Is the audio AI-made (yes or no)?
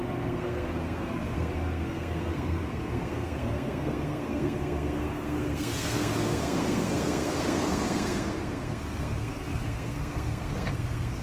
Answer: yes